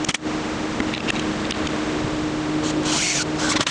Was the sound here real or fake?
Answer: real